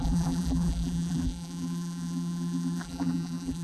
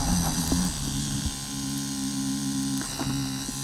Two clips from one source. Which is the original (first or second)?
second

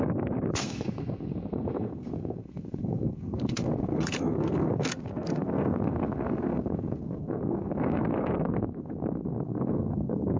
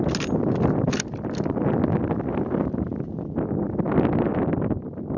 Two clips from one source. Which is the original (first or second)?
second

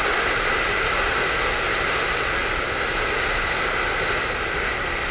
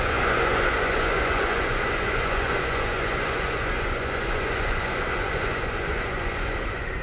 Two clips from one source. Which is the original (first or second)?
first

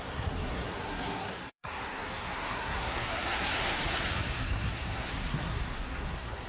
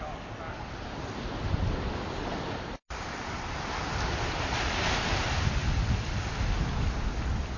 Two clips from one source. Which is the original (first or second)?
second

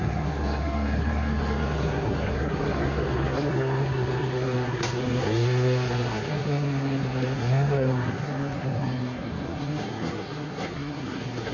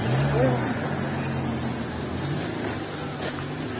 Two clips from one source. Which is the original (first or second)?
second